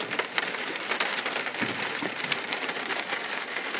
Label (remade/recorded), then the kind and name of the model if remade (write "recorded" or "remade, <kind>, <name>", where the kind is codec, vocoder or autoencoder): remade, vocoder, BigVGAN v2